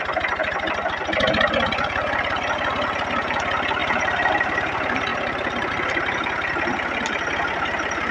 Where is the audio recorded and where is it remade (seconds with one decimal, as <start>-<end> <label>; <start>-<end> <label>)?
0.0-3.8 recorded; 3.8-4.3 remade; 4.3-8.1 recorded